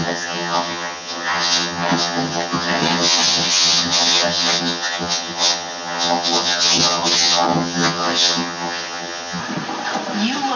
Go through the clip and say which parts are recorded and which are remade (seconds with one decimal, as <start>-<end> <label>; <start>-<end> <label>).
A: 0.0-9.4 remade; 9.4-10.6 recorded